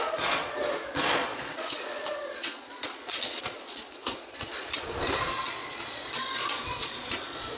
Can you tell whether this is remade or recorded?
remade